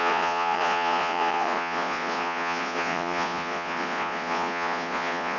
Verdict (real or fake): fake